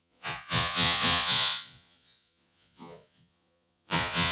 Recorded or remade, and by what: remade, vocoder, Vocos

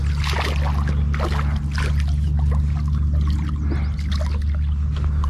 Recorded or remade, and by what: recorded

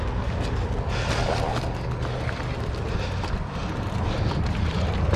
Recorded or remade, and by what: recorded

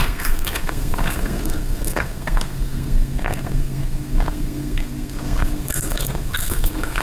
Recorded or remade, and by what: remade, codec, SNAC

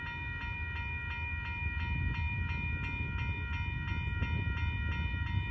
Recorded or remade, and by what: recorded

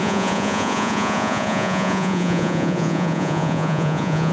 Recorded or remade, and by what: remade, vocoder, Vocos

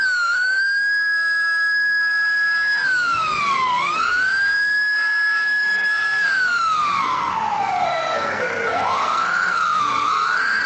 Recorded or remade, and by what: remade, codec, SNAC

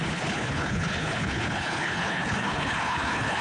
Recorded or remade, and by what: remade, codec, HILCodec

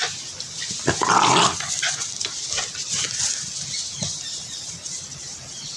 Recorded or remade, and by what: recorded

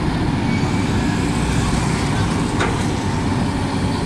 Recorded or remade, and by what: recorded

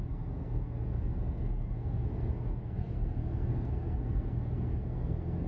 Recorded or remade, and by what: remade, codec, SNAC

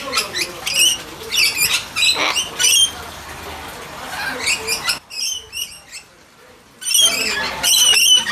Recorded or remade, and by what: recorded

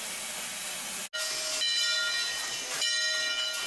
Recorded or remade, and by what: recorded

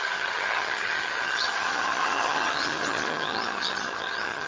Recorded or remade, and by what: remade, vocoder, HiFi-GAN